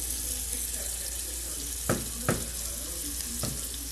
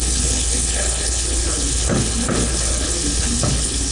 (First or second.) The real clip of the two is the first